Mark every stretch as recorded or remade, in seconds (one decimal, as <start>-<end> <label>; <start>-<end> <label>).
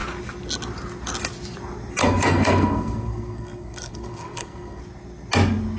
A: 0.0-2.0 recorded; 2.0-4.8 remade; 4.8-5.8 recorded